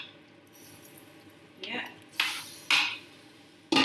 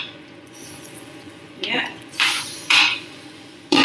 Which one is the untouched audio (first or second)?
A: first